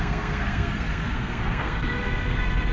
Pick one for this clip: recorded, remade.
remade